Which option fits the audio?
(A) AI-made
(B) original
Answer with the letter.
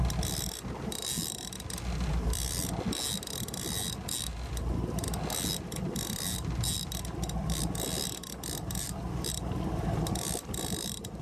B